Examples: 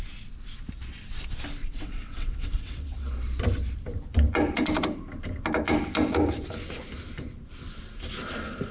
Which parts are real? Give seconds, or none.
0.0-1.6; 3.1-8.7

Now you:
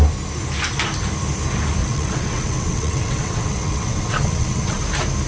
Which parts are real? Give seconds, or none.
0.0-1.8; 4.8-5.3

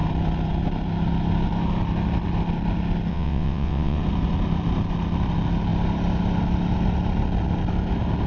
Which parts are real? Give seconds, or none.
0.0-3.1; 4.0-8.3

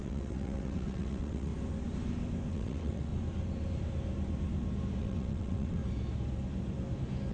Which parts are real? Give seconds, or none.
1.5-2.5; 3.1-5.0; 5.8-7.3

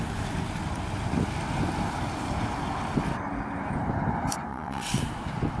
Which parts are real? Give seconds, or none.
0.0-4.5; 5.0-5.6

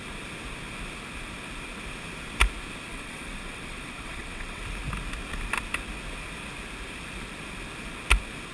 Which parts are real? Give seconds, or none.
0.0-2.9; 4.6-8.5

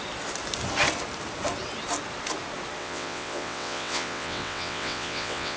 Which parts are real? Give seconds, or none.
0.0-2.8